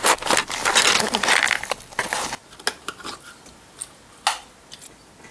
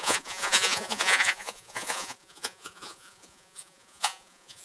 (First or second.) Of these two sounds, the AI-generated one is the second